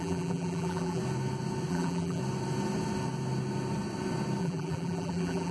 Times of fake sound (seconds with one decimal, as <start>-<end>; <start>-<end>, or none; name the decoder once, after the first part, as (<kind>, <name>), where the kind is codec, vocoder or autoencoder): 0.0-1.0 (vocoder, BigVGAN v2); 1.7-2.2; 4.4-5.5